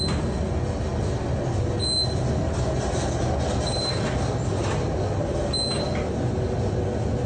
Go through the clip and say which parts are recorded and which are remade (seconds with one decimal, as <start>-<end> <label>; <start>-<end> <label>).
0.0-7.3 recorded